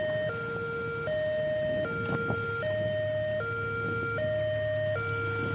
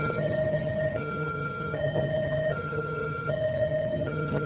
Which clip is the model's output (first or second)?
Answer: second